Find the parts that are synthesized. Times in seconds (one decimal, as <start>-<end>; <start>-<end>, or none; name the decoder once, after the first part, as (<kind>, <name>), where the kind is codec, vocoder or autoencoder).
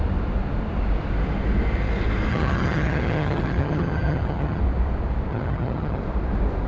2.3-4.6 (vocoder, HiFi-GAN); 5.3-6.0